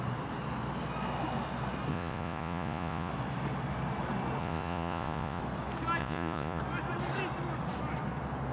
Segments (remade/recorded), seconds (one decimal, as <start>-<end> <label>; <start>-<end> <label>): 0.0-1.9 recorded; 1.9-3.1 remade; 3.1-4.4 recorded; 4.4-5.4 remade; 5.4-6.0 recorded; 6.0-6.6 remade; 6.6-8.5 recorded